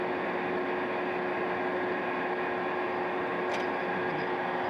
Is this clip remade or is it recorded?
recorded